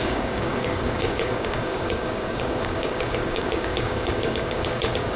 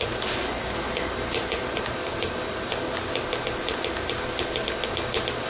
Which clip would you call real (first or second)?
second